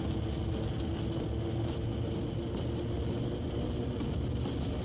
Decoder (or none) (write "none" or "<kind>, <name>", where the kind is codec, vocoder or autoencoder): none